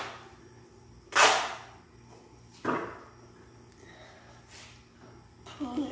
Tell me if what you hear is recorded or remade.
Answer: recorded